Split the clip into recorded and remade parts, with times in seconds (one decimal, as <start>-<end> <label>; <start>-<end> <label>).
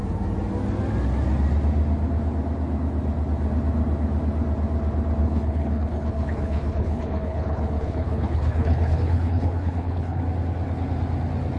0.0-5.2 recorded; 5.2-10.2 remade; 10.2-11.6 recorded